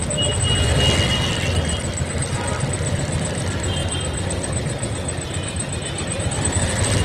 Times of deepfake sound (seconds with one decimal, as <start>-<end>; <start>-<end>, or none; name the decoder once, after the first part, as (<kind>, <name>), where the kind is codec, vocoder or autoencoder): 3.8-6.6 (vocoder, BigVGAN v2)